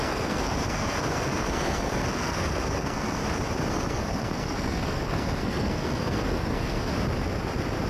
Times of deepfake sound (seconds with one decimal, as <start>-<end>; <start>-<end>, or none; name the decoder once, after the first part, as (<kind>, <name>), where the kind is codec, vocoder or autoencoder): 0.0-3.2 (codec, SNAC); 3.7-6.9